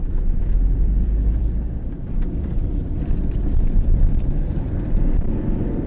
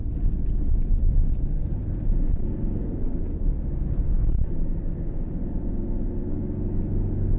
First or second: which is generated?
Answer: first